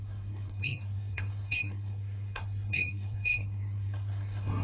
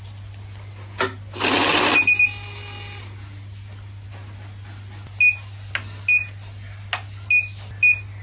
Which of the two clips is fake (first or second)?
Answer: first